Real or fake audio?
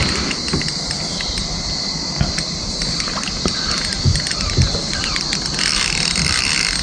real